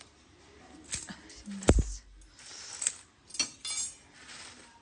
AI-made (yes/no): no